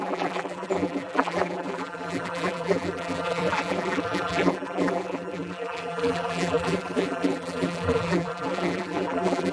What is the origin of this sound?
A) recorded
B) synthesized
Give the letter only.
B